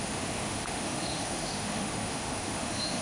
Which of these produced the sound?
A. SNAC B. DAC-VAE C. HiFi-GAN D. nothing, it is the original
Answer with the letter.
B